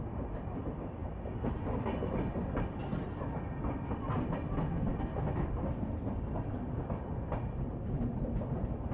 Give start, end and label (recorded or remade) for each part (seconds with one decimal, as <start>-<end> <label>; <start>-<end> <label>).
0.0-8.9 recorded